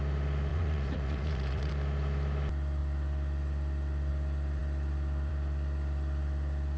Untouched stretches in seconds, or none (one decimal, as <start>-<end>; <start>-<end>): 0.0-0.5; 1.7-6.8